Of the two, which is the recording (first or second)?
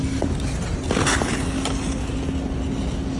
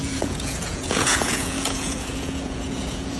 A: first